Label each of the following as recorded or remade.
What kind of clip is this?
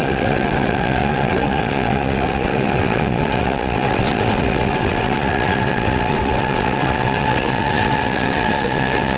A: remade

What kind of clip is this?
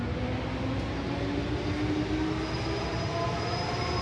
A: recorded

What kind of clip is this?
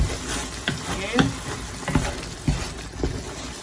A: recorded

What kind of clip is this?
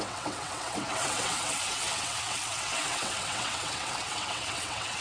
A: remade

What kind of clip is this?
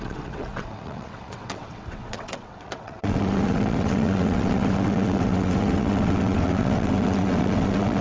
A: remade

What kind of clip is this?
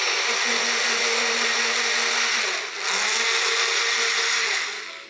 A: recorded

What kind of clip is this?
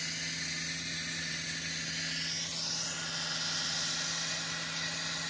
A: recorded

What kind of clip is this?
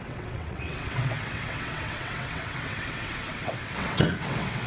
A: remade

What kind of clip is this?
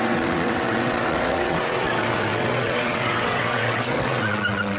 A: remade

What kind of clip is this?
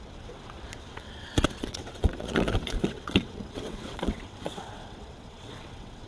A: remade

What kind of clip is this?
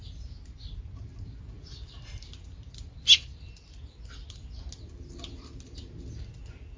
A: recorded